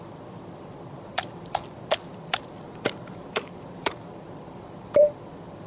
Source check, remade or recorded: remade